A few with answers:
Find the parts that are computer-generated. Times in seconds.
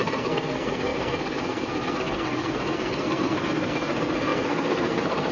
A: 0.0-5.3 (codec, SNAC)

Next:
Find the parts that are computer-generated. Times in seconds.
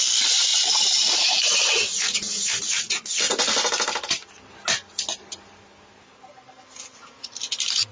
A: none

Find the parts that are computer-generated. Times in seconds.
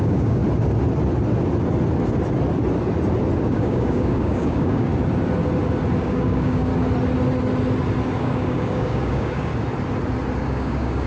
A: 0.0-0.4 (codec, DAC); 3.5-4.9; 6.0-6.7; 8.2-9.5; 10.4-11.1